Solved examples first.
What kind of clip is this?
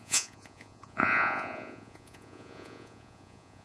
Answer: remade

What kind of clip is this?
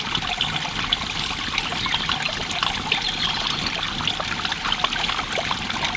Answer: recorded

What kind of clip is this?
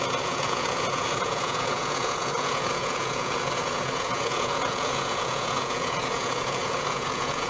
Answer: remade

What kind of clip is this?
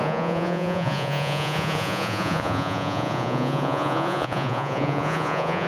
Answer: remade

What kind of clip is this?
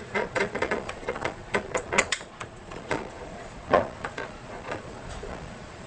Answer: remade